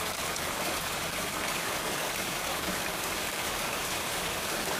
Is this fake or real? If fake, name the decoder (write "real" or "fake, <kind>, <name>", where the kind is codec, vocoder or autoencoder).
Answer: fake, codec, DAC